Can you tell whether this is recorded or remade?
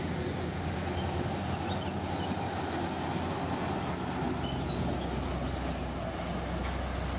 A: recorded